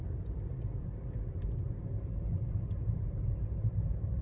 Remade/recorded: remade